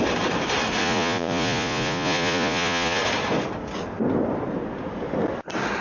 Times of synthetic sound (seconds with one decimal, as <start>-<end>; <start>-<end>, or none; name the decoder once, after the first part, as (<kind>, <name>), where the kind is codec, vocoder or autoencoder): 0.8-3.0 (vocoder, Vocos)